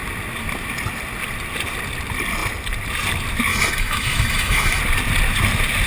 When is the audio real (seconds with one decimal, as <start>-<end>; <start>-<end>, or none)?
0.0-3.5; 4.8-5.9